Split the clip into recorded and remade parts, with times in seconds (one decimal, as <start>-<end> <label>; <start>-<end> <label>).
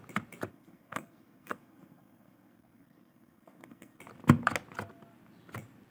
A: 0.0-0.5 recorded; 0.5-4.0 remade; 4.0-5.9 recorded